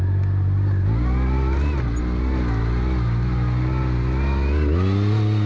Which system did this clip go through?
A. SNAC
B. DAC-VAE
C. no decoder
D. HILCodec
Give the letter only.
C